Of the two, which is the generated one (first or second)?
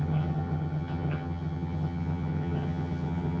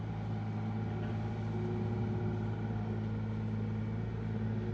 first